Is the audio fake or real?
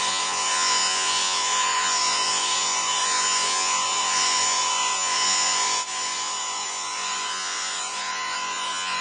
fake